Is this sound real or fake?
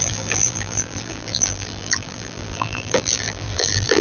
fake